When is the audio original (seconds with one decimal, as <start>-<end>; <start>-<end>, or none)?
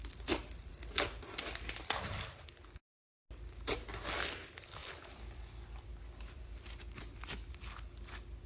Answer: 0.7-4.8; 7.5-8.5